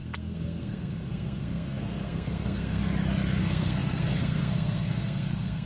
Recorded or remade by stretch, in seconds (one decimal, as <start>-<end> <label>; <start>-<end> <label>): 0.0-2.8 remade; 2.8-3.4 recorded; 3.4-5.7 remade